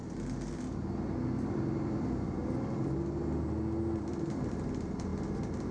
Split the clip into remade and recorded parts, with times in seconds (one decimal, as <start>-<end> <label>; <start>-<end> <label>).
0.0-1.5 recorded; 1.5-2.4 remade; 2.4-4.0 recorded; 4.0-5.1 remade; 5.1-5.7 recorded